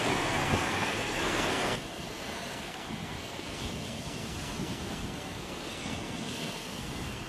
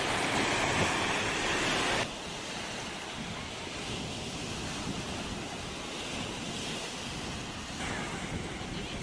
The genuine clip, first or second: second